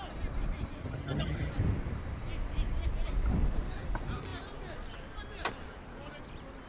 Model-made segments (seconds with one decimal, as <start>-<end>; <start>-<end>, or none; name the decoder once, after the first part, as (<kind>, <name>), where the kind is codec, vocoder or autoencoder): 0.8-1.5 (vocoder, HiFi-GAN)

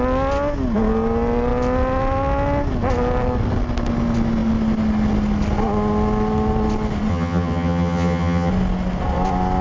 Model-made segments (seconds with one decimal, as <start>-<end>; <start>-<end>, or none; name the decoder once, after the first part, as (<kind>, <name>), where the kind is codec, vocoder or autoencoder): 7.1-8.5 (vocoder, HiFi-GAN)

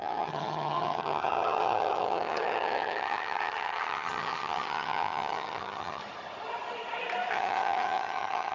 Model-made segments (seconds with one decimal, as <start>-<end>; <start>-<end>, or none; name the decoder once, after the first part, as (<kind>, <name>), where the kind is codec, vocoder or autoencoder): 0.0-6.0 (vocoder, HiFi-GAN); 7.3-8.5

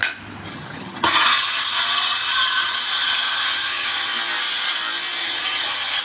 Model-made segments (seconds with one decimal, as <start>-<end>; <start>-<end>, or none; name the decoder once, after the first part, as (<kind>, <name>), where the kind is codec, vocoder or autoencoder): 0.5-4.1 (vocoder, HiFi-GAN); 5.2-6.0

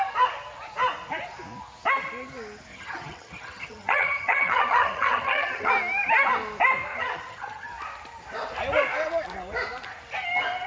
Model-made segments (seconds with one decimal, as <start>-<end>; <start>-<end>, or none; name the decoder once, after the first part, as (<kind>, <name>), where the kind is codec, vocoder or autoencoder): 2.7-5.7 (vocoder, HiFi-GAN); 6.9-7.7